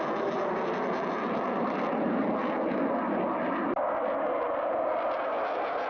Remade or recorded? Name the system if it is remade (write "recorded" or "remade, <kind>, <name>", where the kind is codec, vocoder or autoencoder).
recorded